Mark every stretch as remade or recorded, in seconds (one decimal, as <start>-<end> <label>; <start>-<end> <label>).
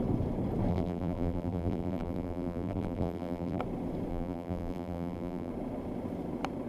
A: 0.0-0.7 recorded; 0.7-3.6 remade; 3.6-4.1 recorded; 4.1-5.5 remade; 5.5-6.7 recorded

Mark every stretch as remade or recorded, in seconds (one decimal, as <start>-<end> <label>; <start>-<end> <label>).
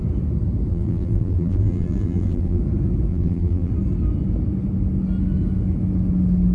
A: 0.0-0.7 recorded; 0.7-2.6 remade; 2.6-3.1 recorded; 3.1-3.7 remade; 3.7-6.5 recorded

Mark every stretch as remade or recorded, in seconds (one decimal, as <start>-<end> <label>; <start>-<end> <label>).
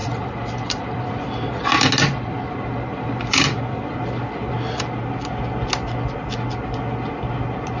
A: 0.0-1.4 remade; 1.4-2.9 recorded; 2.9-4.5 remade; 4.5-7.8 recorded